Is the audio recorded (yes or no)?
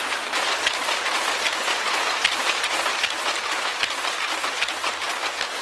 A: yes